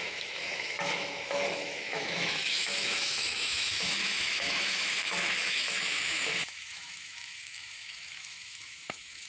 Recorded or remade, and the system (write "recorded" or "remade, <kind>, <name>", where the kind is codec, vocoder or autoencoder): remade, autoencoder, DAC-VAE